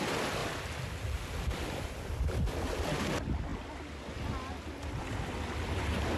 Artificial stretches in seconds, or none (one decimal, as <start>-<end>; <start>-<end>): none